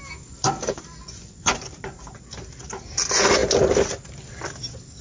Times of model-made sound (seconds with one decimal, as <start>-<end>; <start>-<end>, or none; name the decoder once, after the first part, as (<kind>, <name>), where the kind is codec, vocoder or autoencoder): 1.0-1.6 (vocoder, Vocos)